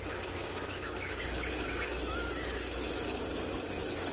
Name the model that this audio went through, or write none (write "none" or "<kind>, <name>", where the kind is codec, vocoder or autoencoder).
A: codec, DAC